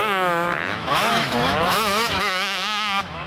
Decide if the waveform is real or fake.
fake